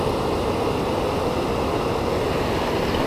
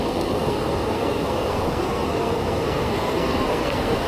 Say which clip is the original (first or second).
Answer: first